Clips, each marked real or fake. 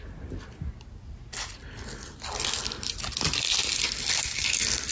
real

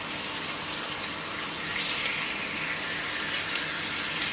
real